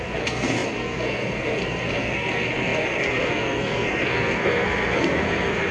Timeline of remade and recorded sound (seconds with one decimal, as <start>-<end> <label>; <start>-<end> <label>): 0.0-5.7 remade